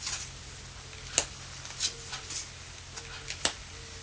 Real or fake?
real